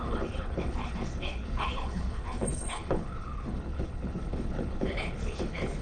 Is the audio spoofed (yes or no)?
yes